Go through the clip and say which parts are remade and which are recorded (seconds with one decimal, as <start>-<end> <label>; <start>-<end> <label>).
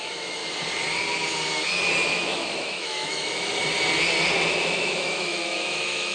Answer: 0.0-0.4 remade; 0.4-1.9 recorded; 1.9-3.6 remade; 3.6-4.5 recorded; 4.5-6.1 remade